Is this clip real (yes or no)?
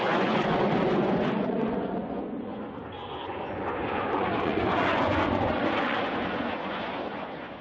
no